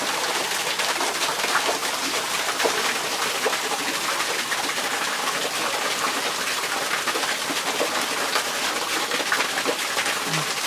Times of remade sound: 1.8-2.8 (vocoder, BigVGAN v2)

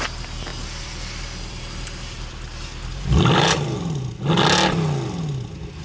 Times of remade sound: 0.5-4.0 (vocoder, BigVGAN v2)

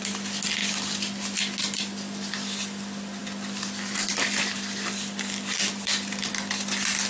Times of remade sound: 0.6-1.4 (vocoder, BigVGAN v2); 3.2-6.3